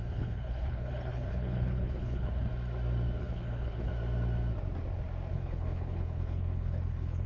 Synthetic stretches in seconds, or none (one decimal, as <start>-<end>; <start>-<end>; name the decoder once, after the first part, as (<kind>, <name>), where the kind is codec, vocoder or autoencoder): 0.0-2.5 (codec, HILCodec); 3.2-3.9; 5.3-7.3